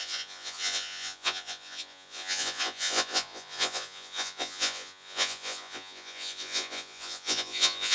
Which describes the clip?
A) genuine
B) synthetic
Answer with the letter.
B